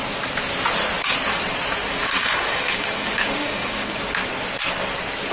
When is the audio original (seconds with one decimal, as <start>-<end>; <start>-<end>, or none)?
0.0-1.8; 4.0-5.3